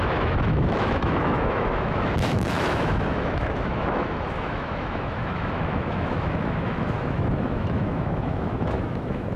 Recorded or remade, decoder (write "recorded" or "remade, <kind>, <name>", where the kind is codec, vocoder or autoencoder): remade, autoencoder, DAC-VAE